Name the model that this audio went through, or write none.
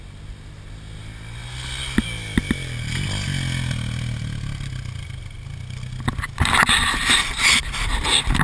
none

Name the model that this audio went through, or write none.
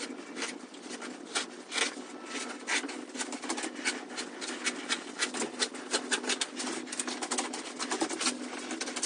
none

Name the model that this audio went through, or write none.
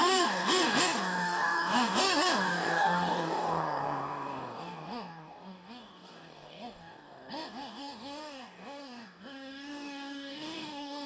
codec, DAC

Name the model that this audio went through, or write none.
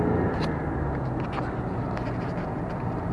none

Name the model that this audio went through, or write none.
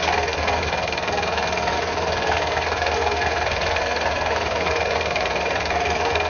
codec, SNAC